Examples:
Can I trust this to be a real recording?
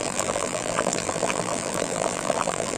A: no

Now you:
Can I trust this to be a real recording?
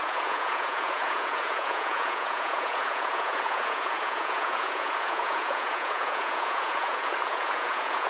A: no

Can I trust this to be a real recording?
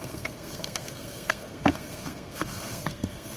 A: no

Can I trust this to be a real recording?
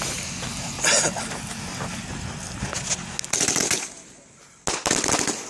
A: yes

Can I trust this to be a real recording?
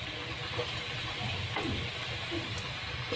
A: yes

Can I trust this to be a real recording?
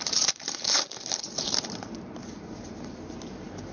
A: no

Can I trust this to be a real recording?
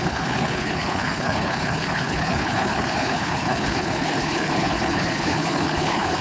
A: no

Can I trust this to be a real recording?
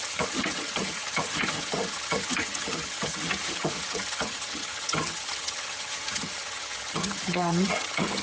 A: no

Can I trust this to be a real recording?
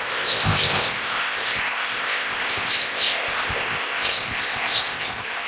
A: no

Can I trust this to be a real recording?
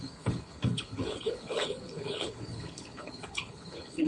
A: no